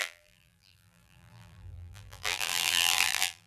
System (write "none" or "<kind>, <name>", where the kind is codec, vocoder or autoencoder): vocoder, BigVGAN v2